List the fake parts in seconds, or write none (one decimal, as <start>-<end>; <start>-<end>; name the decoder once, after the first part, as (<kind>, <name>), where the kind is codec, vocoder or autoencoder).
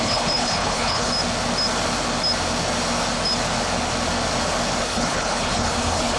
0.0-1.1 (codec, HILCodec); 4.8-6.2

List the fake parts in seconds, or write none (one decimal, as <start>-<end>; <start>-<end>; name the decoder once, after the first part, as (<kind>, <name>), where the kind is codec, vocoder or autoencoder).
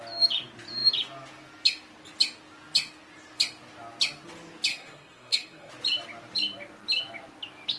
4.7-5.7 (codec, SNAC)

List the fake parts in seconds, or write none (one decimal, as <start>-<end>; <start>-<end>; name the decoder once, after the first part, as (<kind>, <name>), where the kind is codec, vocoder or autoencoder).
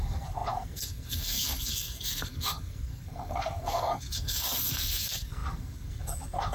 0.0-6.5 (codec, SNAC)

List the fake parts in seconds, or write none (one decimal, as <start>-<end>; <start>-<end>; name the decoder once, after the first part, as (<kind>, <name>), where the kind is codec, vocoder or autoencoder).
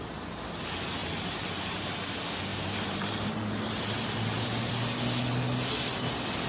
1.0-2.0 (vocoder, BigVGAN v2); 2.5-4.7